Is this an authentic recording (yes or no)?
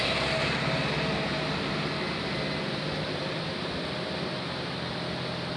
yes